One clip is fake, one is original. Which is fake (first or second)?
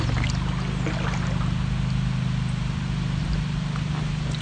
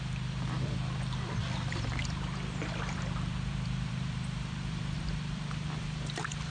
second